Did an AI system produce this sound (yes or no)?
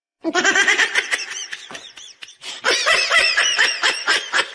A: yes